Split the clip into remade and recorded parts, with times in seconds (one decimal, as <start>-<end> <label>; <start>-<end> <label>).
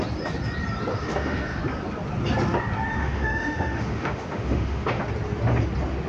0.0-0.9 recorded; 0.9-1.6 remade; 1.6-2.9 recorded; 2.9-5.0 remade; 5.0-6.1 recorded